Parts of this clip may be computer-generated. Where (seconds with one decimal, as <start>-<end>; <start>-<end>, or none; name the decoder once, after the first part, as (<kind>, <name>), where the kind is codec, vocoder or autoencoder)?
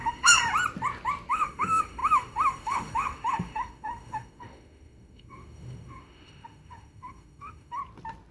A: 0.0-0.4 (autoencoder, DAC-VAE); 1.3-7.8